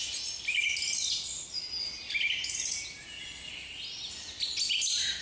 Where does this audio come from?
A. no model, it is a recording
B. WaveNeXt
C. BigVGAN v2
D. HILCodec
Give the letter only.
A